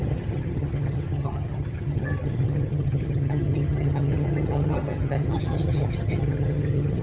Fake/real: fake